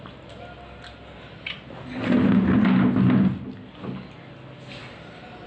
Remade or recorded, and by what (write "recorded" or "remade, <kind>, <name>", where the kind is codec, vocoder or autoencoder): recorded